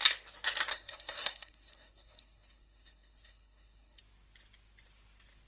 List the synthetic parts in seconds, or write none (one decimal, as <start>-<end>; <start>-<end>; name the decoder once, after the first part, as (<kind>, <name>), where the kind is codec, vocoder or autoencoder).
0.7-4.0 (codec, SNAC)